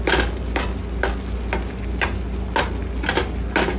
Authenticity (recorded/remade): recorded